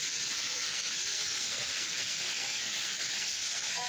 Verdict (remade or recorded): remade